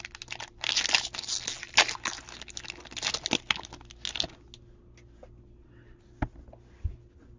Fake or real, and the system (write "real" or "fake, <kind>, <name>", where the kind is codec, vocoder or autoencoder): real